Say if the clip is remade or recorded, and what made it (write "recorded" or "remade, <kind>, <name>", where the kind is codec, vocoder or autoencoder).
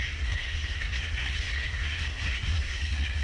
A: remade, codec, SNAC